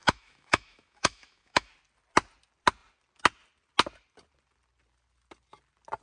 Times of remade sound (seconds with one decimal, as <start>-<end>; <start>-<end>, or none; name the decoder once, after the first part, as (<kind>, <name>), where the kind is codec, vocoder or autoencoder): 0.0-1.7 (autoencoder, DAC-VAE)